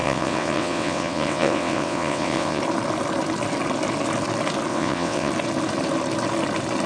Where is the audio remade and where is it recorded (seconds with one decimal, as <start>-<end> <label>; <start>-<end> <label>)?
0.0-2.6 remade; 2.6-4.7 recorded; 4.7-5.3 remade; 5.3-6.9 recorded